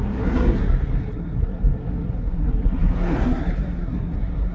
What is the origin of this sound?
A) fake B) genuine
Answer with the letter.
A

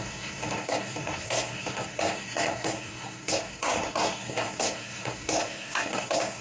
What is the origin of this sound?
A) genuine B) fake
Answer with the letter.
B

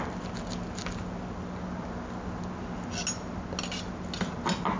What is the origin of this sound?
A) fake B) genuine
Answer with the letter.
B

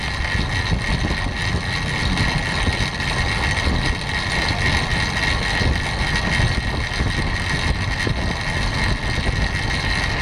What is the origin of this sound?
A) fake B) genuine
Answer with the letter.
B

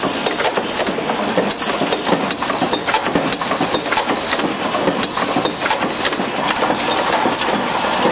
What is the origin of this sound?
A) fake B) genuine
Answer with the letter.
B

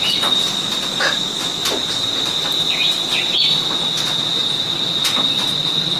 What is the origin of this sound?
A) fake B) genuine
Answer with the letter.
B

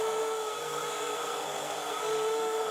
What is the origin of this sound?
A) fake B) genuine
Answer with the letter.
A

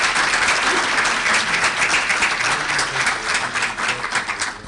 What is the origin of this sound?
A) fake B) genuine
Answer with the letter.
B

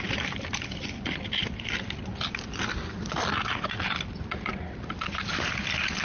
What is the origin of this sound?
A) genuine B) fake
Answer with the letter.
A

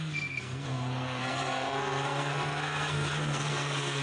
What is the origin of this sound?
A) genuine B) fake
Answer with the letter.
B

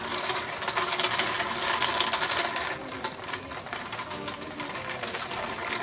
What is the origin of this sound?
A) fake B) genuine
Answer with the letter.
B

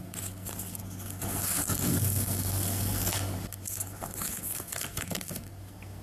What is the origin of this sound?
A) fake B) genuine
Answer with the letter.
A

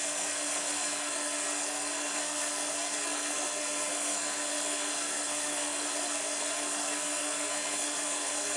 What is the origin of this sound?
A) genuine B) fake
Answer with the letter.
B